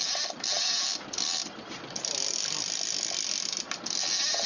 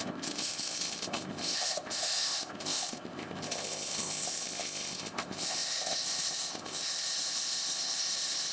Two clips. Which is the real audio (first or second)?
first